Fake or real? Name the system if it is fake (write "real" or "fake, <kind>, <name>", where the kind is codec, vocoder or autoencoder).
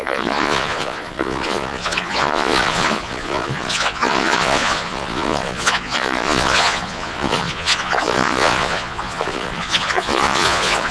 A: fake, vocoder, Vocos